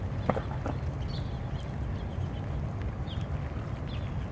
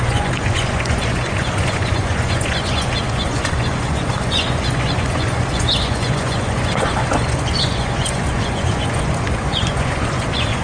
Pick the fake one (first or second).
second